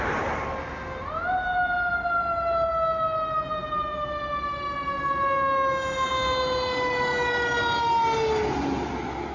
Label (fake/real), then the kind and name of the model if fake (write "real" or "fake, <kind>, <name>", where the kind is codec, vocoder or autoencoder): real